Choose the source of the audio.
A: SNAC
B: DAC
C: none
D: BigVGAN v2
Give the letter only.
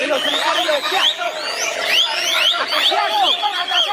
D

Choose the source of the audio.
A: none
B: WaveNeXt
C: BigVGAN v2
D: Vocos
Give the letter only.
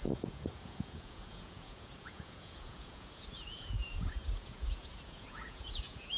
D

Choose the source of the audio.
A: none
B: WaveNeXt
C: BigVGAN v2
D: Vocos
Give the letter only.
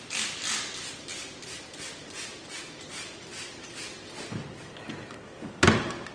A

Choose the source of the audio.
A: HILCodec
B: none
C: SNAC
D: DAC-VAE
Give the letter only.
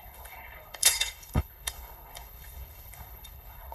A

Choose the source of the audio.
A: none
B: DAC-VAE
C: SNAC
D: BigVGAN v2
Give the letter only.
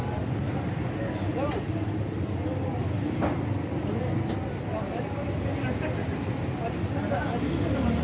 A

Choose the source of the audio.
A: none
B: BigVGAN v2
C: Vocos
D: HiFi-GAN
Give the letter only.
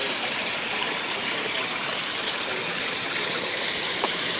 B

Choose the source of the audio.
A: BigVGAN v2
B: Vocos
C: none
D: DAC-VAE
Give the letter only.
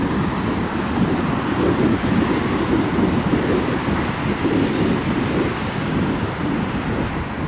C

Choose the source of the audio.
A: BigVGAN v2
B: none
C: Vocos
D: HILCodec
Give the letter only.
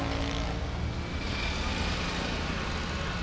B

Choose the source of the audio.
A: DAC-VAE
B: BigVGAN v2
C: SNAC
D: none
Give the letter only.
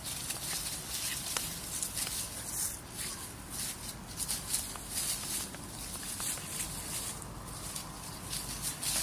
D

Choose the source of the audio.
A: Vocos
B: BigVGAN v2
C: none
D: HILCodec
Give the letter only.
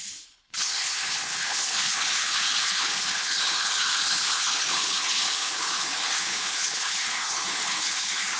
D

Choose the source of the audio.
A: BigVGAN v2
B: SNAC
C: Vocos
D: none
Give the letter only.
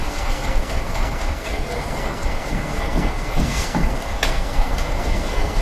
B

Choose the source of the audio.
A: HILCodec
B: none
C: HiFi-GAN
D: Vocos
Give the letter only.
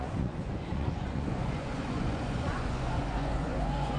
D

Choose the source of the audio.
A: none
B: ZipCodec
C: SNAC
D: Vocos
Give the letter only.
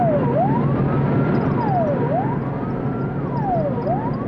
A